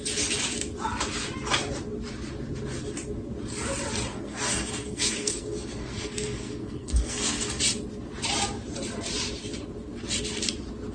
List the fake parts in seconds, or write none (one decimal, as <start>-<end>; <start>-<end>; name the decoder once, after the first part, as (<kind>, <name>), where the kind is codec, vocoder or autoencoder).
4.1-7.6 (codec, SNAC)